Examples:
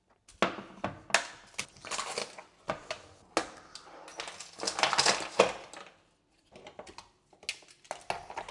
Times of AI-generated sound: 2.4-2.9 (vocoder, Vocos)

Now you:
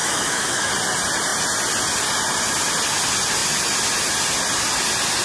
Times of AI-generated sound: 0.0-0.7 (autoencoder, DAC-VAE)

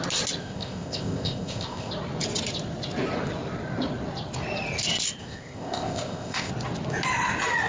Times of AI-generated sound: 0.4-1.9 (codec, ZipCodec); 5.2-6.5

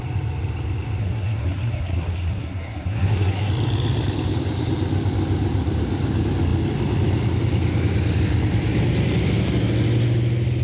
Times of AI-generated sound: 1.0-3.5 (codec, SNAC)

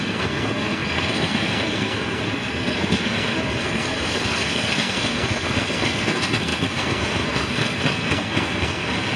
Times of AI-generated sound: 0.0-9.2 (codec, SNAC)

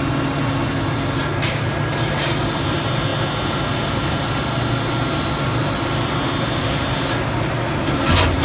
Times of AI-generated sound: none